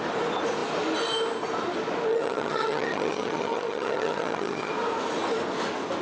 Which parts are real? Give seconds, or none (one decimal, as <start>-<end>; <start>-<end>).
0.0-2.1; 4.7-6.0